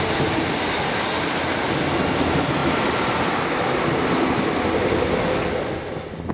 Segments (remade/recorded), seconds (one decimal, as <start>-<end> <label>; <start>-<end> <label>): 0.0-6.3 recorded

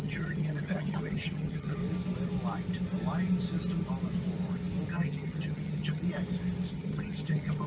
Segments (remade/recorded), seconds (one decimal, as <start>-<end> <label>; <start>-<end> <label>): 0.0-1.8 remade; 1.8-4.9 recorded; 4.9-6.0 remade; 6.0-6.7 recorded; 6.7-7.7 remade

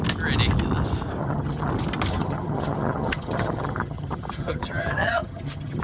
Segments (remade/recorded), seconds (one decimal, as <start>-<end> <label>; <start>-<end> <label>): 0.0-1.2 recorded; 1.2-1.7 remade; 1.7-2.1 recorded; 2.1-5.8 remade